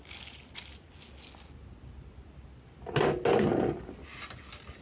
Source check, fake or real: real